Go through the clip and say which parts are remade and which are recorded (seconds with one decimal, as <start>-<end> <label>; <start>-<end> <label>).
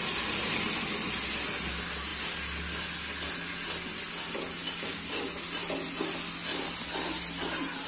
0.0-7.9 recorded